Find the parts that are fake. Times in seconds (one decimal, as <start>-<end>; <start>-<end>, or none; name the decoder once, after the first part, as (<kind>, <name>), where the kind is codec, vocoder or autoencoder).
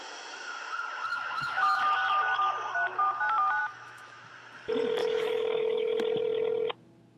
1.1-1.8 (autoencoder, DAC-VAE); 3.6-4.3; 5.0-6.0